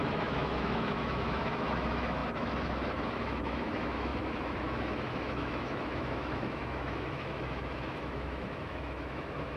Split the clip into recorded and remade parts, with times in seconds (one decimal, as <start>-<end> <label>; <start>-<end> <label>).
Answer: 0.0-9.6 remade